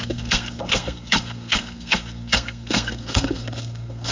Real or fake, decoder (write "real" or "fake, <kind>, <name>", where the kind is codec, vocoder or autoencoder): fake, codec, SNAC